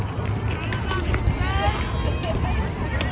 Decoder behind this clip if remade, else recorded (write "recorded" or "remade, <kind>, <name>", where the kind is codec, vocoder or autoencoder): recorded